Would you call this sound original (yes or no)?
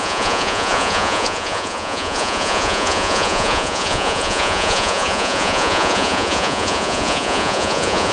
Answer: no